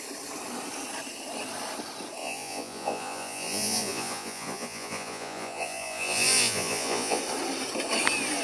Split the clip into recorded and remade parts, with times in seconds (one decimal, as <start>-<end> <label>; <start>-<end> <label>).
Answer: 0.0-2.2 recorded; 2.2-7.2 remade; 7.2-8.4 recorded